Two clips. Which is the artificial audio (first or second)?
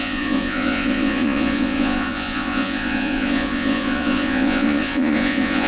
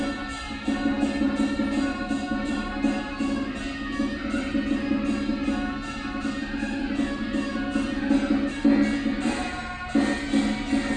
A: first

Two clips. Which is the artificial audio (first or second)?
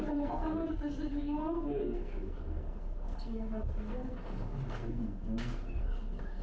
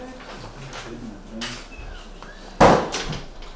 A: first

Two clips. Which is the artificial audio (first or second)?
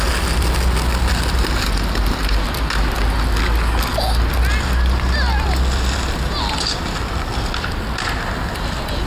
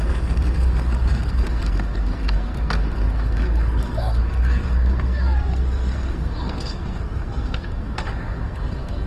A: second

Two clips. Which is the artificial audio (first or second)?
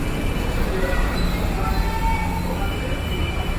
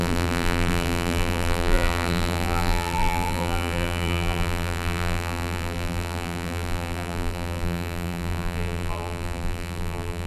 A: second